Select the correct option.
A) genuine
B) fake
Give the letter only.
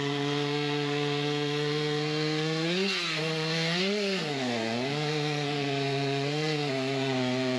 B